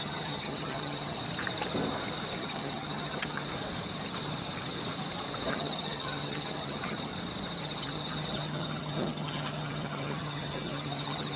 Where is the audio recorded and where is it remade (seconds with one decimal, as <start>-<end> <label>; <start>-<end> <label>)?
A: 0.0-1.2 remade; 1.2-2.4 recorded; 2.4-3.5 remade; 3.5-5.5 recorded; 5.5-7.1 remade; 7.1-7.6 recorded; 7.6-11.4 remade